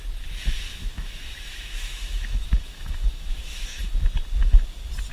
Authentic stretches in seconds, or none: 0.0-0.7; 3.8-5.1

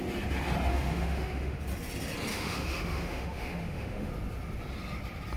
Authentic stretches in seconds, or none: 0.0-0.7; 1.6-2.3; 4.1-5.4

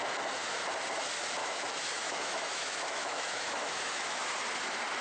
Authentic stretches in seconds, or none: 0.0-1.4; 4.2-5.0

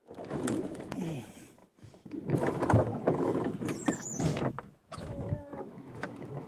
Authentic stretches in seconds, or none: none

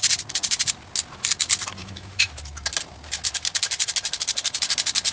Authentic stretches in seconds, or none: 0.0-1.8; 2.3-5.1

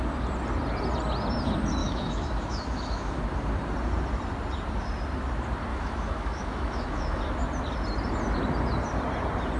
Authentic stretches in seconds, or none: 0.0-1.8; 3.2-5.7; 7.2-9.6

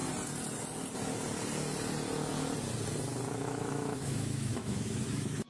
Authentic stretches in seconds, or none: 0.0-3.3